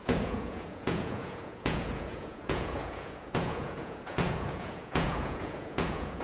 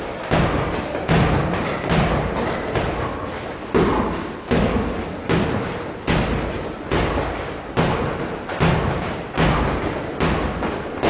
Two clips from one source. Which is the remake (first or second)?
first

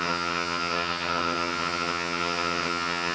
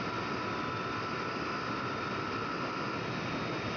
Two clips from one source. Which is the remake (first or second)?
first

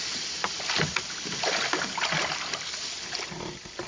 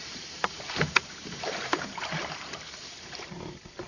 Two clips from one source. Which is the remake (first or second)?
second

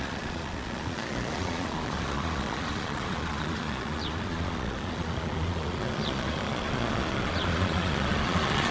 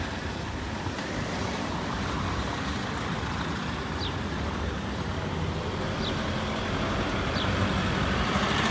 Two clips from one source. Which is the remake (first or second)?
first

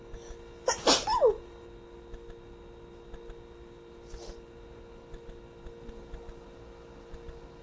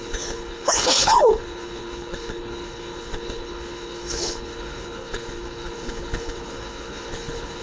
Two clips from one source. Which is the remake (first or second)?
second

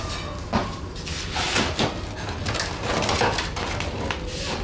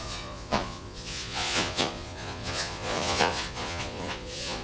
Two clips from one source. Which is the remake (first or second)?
second